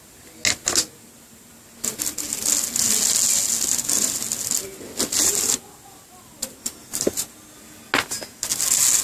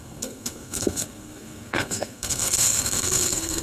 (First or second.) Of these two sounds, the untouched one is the first